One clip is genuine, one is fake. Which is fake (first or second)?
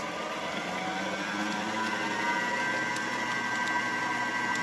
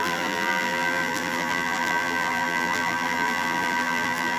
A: second